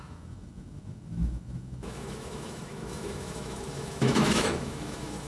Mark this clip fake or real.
fake